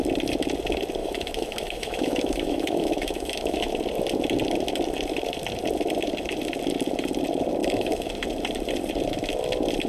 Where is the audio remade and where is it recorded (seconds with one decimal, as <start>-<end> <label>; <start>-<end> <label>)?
0.0-1.0 recorded; 1.0-3.7 remade; 3.7-7.6 recorded; 7.6-8.1 remade; 8.1-9.9 recorded

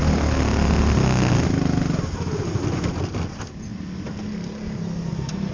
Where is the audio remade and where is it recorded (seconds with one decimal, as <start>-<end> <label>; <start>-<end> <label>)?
0.0-5.5 recorded